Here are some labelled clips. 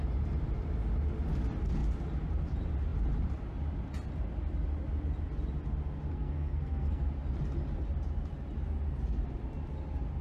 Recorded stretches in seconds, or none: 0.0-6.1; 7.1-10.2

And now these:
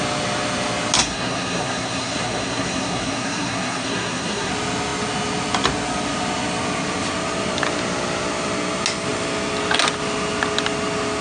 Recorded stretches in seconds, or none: 0.0-1.0; 4.5-11.2

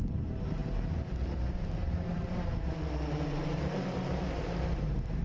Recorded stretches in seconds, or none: 0.6-1.5

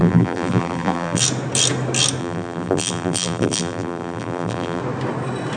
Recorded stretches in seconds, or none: 1.2-2.2; 4.8-5.6

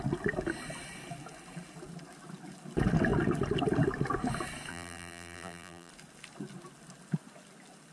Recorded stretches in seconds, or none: 0.0-4.7; 5.9-7.9

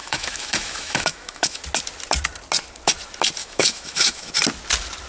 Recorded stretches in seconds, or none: 1.6-3.4; 4.3-5.1